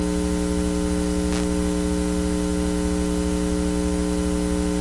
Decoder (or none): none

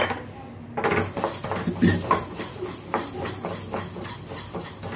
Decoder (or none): none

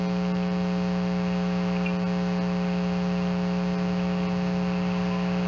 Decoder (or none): none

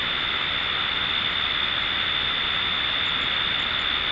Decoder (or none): none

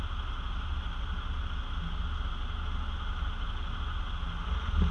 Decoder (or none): none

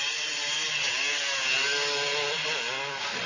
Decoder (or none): none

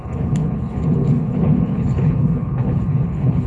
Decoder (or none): codec, HILCodec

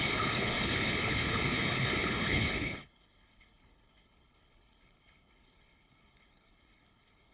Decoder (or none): codec, HILCodec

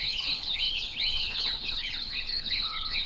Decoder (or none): codec, HILCodec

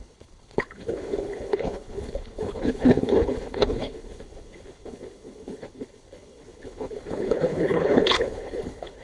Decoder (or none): codec, HILCodec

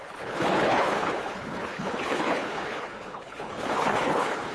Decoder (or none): codec, HILCodec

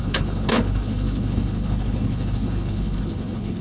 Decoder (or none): codec, HILCodec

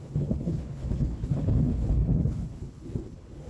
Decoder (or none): codec, HILCodec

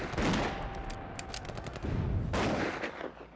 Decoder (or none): none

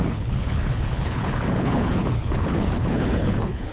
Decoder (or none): codec, HILCodec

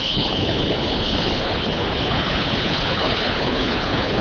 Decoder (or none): codec, HILCodec